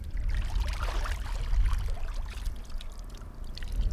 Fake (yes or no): no